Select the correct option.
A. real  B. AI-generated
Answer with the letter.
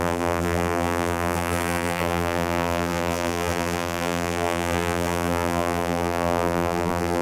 B